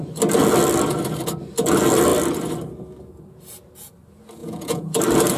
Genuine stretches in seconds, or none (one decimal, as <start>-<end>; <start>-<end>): 0.0-4.4; 5.0-5.4